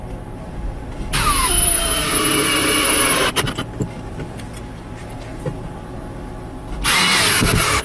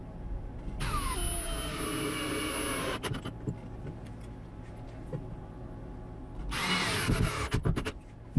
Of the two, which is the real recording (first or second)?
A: second